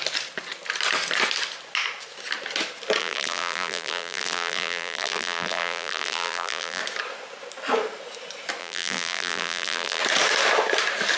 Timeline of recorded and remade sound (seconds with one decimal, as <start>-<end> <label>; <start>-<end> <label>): 0.0-3.0 recorded; 3.0-6.8 remade; 6.8-8.6 recorded; 8.6-10.0 remade; 10.0-11.2 recorded